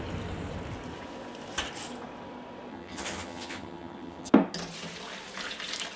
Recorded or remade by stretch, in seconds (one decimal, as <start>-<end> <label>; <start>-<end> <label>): 0.0-2.7 recorded; 2.7-4.3 remade; 4.3-6.0 recorded